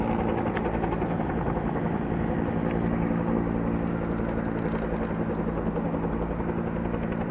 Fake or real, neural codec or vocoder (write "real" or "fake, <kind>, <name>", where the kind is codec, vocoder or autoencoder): real